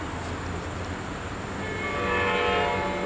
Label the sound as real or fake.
real